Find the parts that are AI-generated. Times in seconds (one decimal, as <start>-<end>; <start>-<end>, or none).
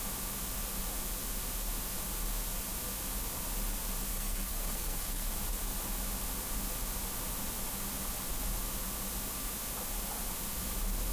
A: 4.1-5.3